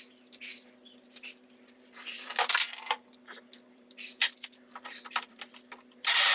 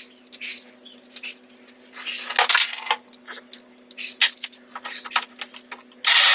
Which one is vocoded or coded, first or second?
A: first